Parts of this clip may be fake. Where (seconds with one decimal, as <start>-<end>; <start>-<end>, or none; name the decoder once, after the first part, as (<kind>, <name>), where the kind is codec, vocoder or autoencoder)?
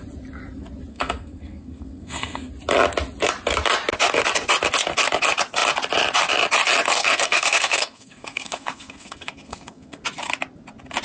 0.9-2.5 (codec, SNAC); 7.0-10.0